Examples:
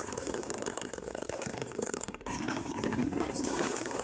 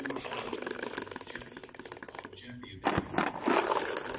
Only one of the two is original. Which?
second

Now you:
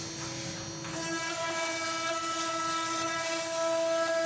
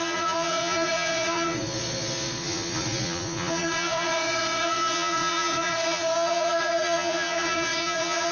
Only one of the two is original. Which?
first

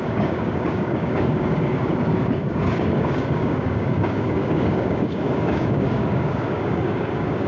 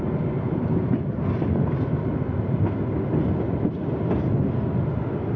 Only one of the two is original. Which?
second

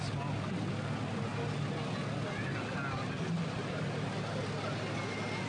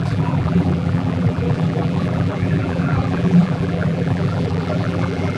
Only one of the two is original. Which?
first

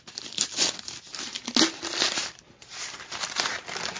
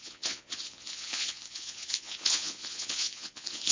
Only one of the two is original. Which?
first